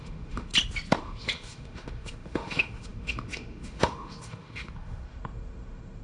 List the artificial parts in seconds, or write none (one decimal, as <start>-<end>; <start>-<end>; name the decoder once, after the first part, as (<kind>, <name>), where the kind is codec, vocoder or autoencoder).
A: 0.0-0.5 (autoencoder, DAC-VAE); 1.0-6.0